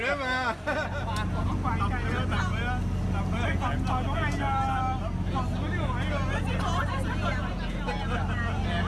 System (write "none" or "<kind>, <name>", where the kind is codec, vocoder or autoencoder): none